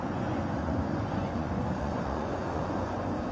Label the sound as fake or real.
fake